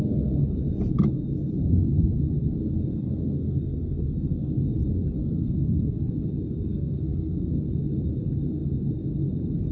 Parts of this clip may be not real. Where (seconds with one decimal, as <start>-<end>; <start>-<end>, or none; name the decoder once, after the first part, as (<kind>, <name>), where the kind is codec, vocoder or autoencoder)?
2.9-4.6 (codec, SNAC); 5.2-6.0; 6.7-7.5